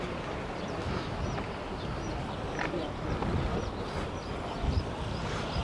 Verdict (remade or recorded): recorded